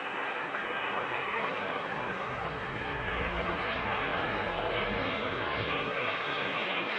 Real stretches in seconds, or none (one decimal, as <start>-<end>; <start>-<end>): none